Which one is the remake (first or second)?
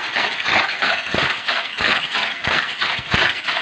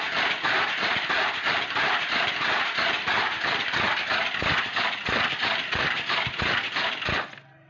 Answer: first